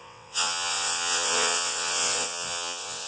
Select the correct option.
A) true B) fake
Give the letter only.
B